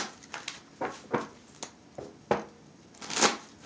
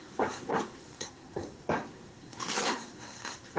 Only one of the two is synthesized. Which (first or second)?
second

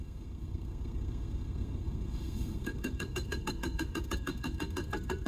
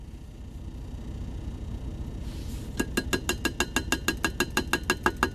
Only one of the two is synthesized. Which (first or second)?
first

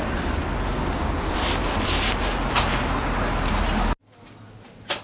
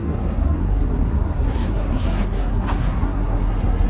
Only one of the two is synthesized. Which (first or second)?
second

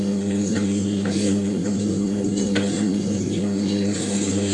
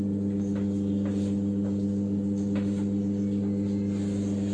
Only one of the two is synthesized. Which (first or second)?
first